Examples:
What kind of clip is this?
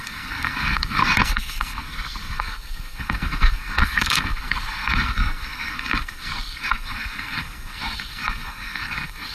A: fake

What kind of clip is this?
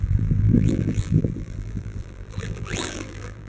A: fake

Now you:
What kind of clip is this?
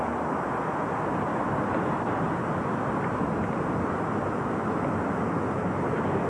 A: real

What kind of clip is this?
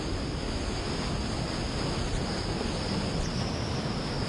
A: real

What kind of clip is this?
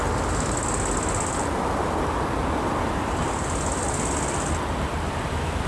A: real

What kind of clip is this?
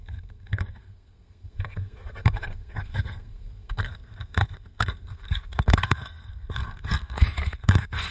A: fake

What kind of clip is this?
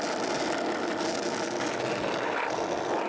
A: real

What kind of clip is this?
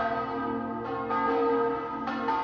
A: real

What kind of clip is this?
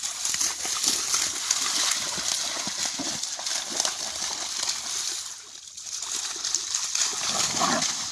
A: real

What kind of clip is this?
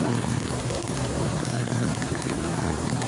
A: fake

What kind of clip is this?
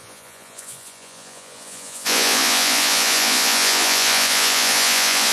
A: fake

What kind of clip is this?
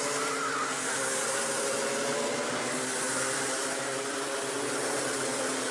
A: real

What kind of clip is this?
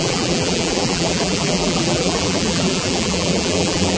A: fake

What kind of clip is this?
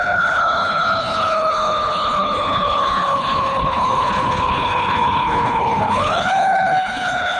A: fake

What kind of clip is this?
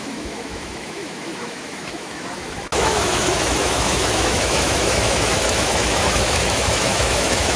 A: fake